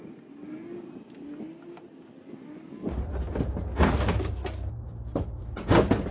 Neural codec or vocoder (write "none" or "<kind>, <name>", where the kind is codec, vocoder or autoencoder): none